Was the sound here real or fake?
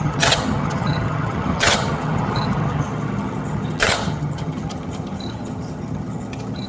fake